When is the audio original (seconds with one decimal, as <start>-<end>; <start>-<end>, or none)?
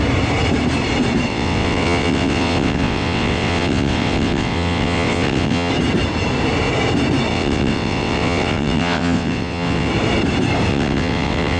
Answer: 0.0-1.3; 5.7-7.3; 9.9-10.7